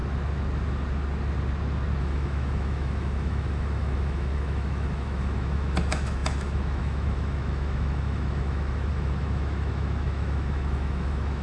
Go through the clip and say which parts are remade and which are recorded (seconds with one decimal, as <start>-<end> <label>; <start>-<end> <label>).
0.0-2.0 recorded; 2.0-11.4 remade